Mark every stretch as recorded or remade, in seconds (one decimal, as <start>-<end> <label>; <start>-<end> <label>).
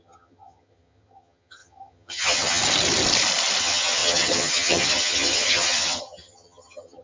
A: 0.0-2.6 remade; 2.6-3.6 recorded; 3.6-7.0 remade